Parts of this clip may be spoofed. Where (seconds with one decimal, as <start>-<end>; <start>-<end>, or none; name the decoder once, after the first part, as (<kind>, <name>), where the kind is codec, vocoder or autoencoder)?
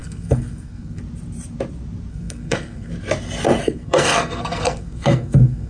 0.0-1.0 (codec, SNAC); 2.1-2.9; 3.6-5.7